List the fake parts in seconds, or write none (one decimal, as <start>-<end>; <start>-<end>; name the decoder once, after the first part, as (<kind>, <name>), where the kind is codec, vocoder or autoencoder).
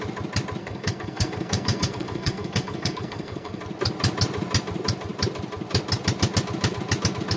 0.6-3.6 (codec, SNAC)